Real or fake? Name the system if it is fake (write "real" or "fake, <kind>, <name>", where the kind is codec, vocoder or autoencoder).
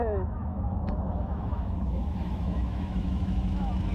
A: fake, autoencoder, DAC-VAE